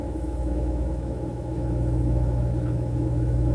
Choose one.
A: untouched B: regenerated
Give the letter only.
B